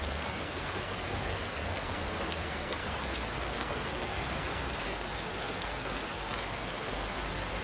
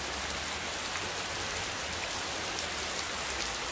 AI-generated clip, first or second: first